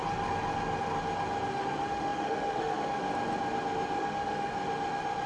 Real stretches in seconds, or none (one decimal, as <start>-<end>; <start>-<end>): 0.0-1.5; 3.0-4.0; 4.5-5.3